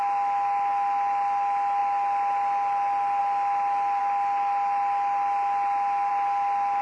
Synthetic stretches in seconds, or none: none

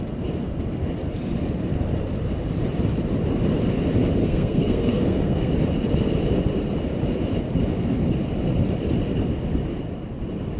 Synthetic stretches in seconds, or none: 4.2-5.5 (codec, SNAC)

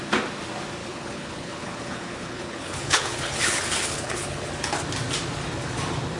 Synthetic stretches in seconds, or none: 0.8-4.5 (codec, HILCodec)

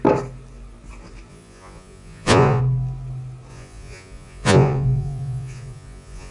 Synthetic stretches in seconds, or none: 1.3-2.6 (vocoder, Vocos); 3.5-6.3

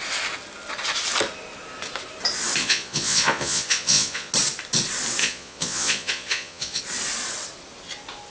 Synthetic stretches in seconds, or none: 2.6-4.3 (vocoder, Vocos); 5.2-6.8